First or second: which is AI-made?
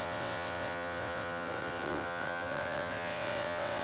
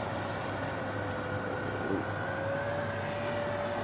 first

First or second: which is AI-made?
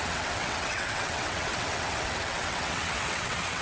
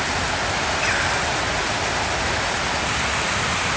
first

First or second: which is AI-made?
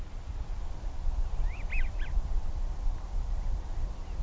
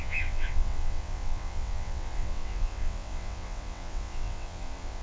second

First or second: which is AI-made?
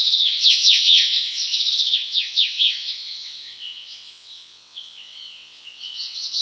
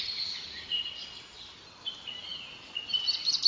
first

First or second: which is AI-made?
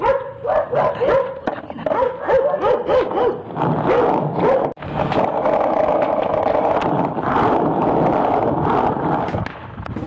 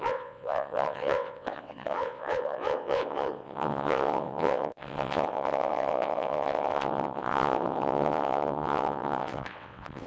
second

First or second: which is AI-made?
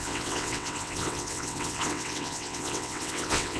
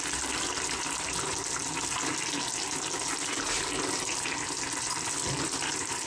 first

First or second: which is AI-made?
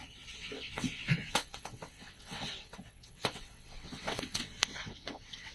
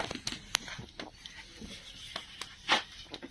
first